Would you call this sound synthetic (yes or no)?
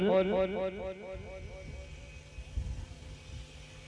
no